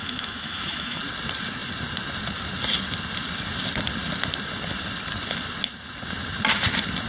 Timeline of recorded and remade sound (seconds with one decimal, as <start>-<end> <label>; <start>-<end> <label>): 0.0-1.0 remade; 1.0-7.1 recorded